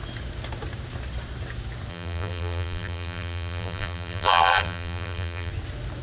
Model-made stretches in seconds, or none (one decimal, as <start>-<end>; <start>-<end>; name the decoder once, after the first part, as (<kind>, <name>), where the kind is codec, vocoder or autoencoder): 1.9-5.5 (vocoder, BigVGAN v2)

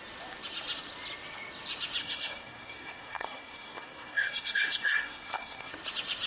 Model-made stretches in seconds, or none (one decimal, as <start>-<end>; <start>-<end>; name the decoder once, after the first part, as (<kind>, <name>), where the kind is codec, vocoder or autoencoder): 2.0-5.7 (codec, SNAC)

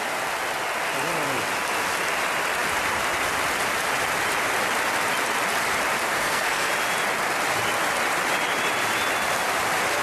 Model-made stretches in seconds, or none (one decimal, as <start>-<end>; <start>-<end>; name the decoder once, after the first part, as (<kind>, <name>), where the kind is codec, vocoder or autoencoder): 6.1-6.7 (codec, SNAC)

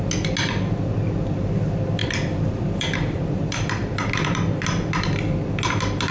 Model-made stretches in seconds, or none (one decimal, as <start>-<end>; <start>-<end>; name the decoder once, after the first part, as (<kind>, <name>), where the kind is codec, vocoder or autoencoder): 2.0-4.1 (vocoder, BigVGAN v2)

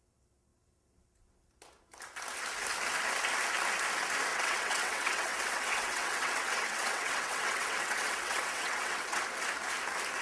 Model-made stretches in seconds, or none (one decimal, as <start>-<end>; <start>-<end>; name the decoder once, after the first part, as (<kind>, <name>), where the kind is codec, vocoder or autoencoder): 4.3-9.2 (vocoder, WaveNeXt)

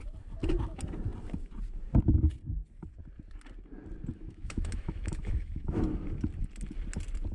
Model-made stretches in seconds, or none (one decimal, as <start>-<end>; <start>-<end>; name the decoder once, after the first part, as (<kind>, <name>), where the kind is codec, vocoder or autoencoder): 4.1-5.8 (autoencoder, DAC-VAE)

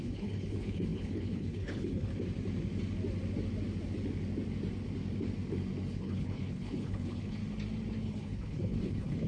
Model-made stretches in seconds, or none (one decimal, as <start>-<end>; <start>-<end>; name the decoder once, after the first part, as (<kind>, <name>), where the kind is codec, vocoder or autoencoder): 0.0-2.1 (codec, HILCodec); 5.9-7.4; 8.0-9.3

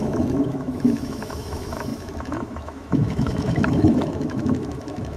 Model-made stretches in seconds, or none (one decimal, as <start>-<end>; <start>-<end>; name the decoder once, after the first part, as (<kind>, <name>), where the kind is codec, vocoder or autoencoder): 0.0-5.2 (autoencoder, DAC-VAE)